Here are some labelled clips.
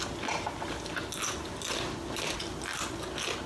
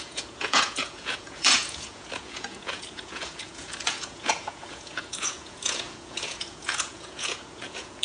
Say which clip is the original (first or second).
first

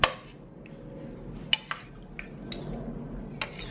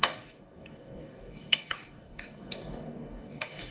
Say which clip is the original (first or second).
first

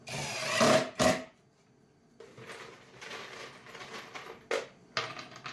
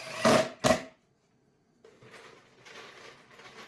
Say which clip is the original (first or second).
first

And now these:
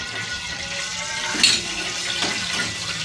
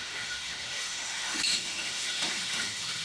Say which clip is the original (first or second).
first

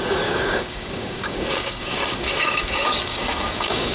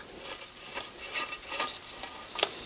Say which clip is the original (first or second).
second